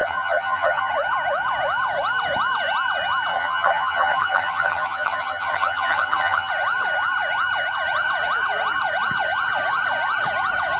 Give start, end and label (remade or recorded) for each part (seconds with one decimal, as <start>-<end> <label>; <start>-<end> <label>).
0.0-0.9 remade; 0.9-3.3 recorded; 3.3-6.5 remade; 6.5-10.8 recorded